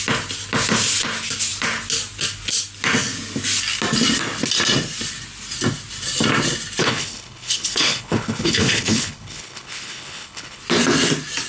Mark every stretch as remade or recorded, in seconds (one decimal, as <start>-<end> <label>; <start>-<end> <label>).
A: 0.0-6.8 recorded; 6.8-10.6 remade; 10.6-11.5 recorded